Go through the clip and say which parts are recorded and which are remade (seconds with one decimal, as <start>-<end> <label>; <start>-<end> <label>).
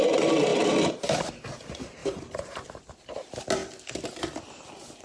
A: 0.0-0.5 recorded; 0.5-1.3 remade; 1.3-2.0 recorded; 2.0-3.0 remade; 3.0-5.0 recorded